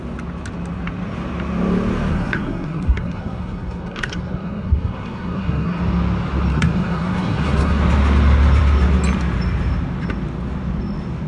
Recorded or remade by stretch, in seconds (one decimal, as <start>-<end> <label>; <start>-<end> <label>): 0.0-2.1 recorded; 2.1-5.8 remade; 5.8-6.5 recorded; 6.5-7.8 remade; 7.8-11.3 recorded